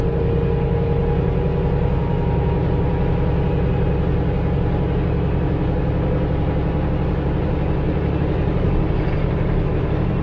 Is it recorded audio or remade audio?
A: recorded